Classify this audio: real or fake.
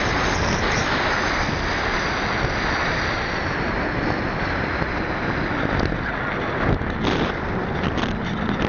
real